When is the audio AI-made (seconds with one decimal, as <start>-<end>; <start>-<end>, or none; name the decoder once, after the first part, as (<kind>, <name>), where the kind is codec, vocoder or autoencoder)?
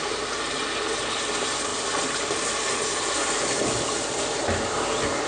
none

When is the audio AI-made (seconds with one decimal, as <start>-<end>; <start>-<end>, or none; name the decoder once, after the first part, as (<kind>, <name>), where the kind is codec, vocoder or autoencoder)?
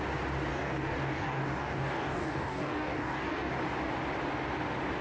0.5-3.5 (codec, DAC)